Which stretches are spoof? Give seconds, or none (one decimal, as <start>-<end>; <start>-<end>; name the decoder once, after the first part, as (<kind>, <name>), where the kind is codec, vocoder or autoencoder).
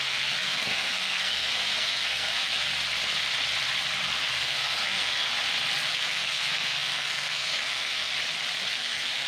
0.0-2.7 (codec, SNAC); 4.3-5.3; 5.9-8.1; 8.7-9.3